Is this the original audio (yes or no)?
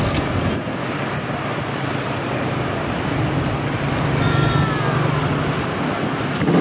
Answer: yes